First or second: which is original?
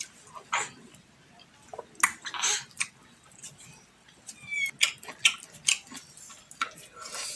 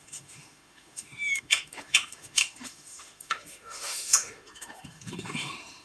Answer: first